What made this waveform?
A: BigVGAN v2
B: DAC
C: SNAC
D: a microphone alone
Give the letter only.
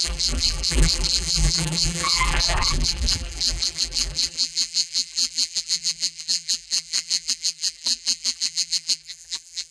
A